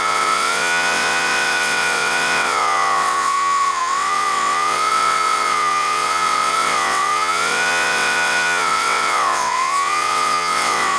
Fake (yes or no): yes